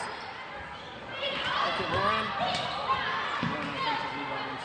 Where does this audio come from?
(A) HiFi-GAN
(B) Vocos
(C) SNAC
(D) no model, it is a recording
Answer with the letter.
D